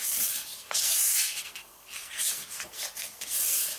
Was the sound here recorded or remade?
remade